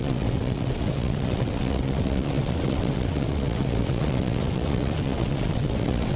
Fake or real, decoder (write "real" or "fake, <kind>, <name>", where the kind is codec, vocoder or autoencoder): fake, vocoder, WaveNeXt